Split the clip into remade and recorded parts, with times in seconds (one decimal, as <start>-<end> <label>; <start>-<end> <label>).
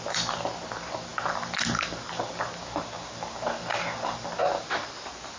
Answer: 0.0-5.4 recorded